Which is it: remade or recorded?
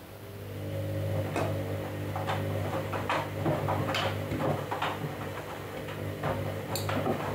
recorded